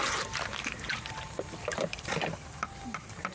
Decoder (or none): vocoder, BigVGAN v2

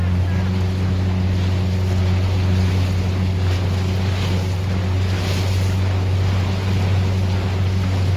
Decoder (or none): none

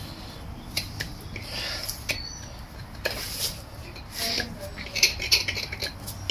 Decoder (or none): none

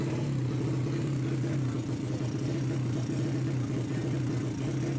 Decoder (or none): none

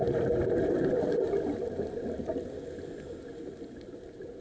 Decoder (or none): none